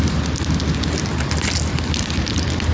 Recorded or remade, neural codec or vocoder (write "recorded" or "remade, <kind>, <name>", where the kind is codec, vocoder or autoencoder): recorded